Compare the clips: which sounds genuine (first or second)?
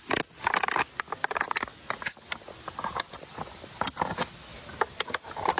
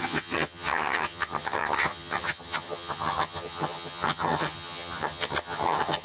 first